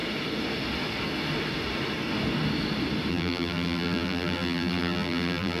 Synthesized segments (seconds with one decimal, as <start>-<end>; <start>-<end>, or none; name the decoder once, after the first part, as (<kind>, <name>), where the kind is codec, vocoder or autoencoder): 3.1-5.6 (vocoder, BigVGAN v2)